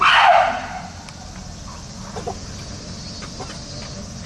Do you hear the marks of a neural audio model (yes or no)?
no